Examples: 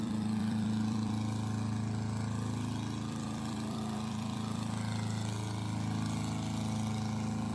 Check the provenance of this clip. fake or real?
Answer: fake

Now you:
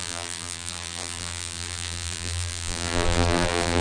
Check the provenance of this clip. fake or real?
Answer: fake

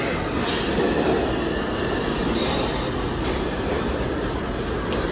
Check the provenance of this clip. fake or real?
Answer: real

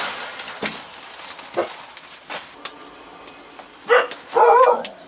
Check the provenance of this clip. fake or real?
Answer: real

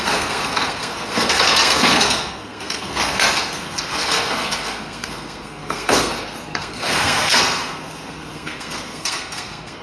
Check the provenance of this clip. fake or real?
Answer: fake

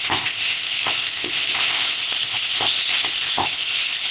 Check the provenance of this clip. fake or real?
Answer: fake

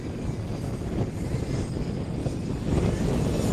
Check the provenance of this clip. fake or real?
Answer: real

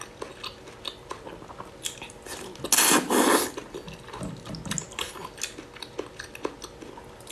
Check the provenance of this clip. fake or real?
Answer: real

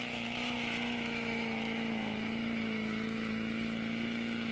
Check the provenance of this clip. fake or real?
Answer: fake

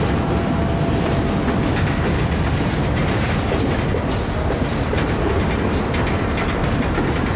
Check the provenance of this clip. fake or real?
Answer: real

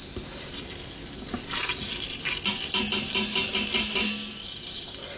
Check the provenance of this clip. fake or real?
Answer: real